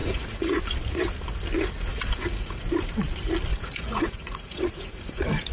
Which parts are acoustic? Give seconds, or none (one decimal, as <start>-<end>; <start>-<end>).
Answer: 0.6-1.9; 2.6-3.5